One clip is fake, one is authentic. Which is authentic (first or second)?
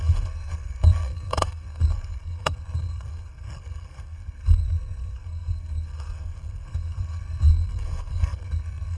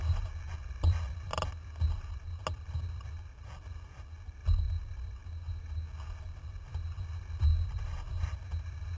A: second